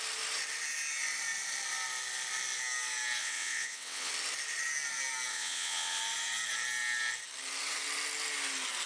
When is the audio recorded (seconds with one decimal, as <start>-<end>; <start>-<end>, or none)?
0.0-3.2; 4.1-5.3; 6.0-8.9